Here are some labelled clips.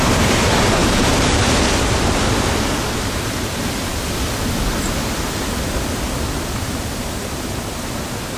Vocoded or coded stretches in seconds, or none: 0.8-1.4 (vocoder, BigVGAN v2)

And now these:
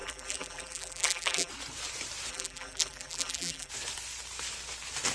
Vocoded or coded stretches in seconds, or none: 0.0-1.5 (vocoder, BigVGAN v2); 2.3-3.7